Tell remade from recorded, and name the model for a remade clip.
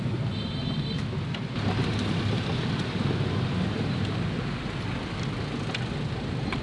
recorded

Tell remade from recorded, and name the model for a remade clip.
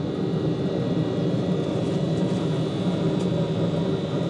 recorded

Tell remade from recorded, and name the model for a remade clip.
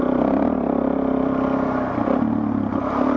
recorded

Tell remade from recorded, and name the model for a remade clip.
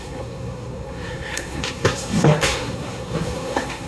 remade, codec, SNAC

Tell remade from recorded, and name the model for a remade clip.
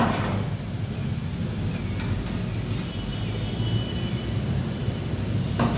recorded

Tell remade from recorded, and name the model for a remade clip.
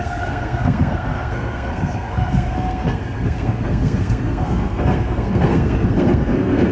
remade, codec, SNAC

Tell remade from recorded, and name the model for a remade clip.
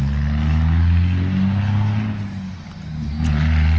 recorded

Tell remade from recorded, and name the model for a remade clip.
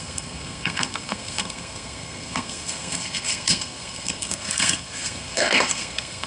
remade, codec, SNAC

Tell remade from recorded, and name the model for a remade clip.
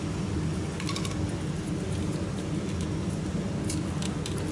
recorded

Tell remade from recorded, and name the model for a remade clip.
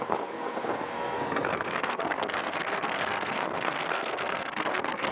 remade, codec, SNAC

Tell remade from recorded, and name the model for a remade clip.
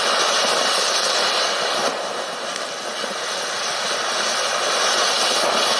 recorded